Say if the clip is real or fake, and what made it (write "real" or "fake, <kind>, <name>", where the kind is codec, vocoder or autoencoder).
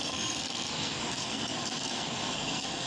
fake, codec, SNAC